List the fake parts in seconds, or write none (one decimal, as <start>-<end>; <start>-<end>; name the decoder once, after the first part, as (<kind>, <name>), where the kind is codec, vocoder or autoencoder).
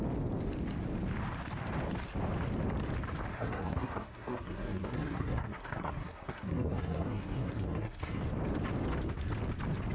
3.3-8.2 (codec, SNAC)